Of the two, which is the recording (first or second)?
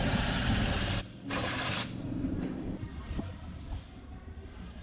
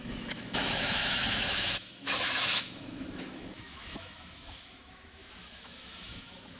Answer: first